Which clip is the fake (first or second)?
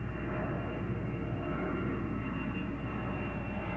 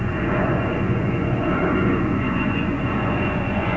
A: second